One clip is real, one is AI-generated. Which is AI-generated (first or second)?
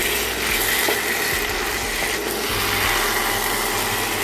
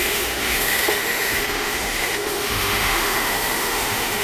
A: second